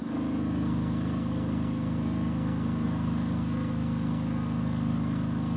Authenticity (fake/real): fake